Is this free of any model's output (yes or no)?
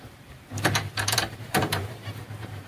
no